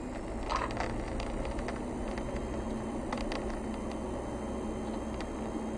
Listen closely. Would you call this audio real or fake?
real